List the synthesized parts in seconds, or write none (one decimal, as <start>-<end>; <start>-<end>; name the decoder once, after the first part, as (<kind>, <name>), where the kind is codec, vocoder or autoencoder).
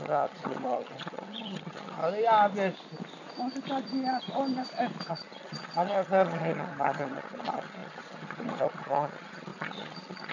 0.0-2.0 (vocoder, HiFi-GAN); 5.1-10.3